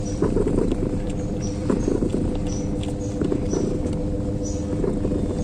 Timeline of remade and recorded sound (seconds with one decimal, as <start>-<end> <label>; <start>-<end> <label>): 0.0-2.1 remade; 2.1-4.9 recorded; 4.9-5.4 remade